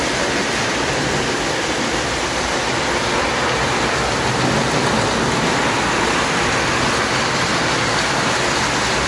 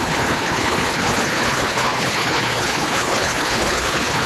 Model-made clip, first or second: second